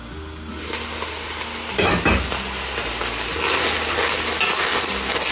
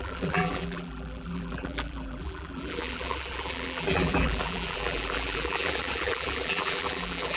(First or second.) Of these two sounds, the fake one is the second